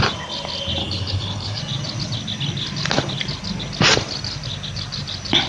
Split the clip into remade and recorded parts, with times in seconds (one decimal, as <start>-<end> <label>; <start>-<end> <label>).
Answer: 0.0-0.8 recorded; 0.8-1.6 remade; 1.6-5.5 recorded